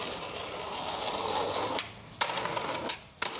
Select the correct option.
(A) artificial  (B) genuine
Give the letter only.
B